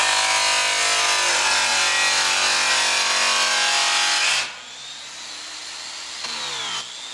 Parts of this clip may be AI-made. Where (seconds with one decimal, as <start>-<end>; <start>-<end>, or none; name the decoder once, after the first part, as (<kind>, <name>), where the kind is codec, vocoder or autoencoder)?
none